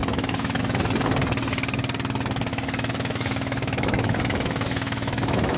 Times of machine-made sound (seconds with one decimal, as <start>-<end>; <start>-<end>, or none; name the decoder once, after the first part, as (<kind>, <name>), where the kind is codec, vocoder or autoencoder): 0.0-0.6 (autoencoder, DAC-VAE); 2.5-5.6